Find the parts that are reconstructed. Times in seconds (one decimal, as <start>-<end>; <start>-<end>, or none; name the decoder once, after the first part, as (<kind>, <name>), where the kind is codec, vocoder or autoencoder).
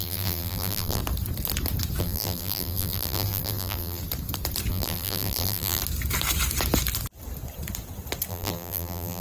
0.0-1.0 (vocoder, BigVGAN v2); 2.0-4.0; 4.7-5.8; 8.3-9.2